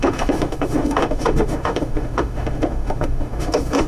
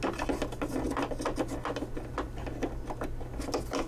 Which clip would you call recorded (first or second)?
second